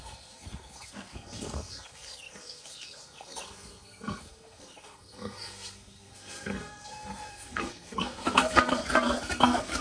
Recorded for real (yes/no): no